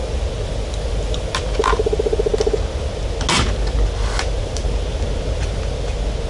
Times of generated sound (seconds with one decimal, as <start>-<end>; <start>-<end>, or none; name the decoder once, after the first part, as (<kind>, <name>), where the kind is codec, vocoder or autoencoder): none